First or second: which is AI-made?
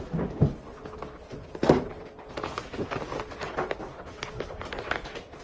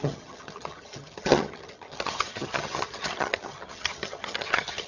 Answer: second